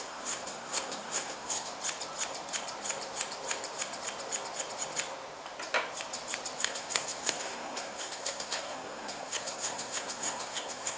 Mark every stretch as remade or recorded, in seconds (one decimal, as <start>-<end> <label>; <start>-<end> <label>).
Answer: 0.0-1.7 remade; 1.7-6.6 recorded; 6.6-11.0 remade